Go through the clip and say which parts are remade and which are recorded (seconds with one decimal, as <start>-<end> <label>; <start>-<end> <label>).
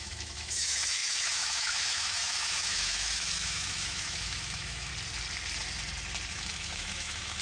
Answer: 0.0-4.9 remade; 4.9-6.3 recorded; 6.3-7.4 remade